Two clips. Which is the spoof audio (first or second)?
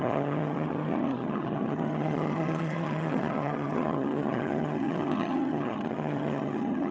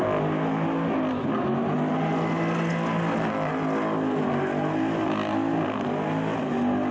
first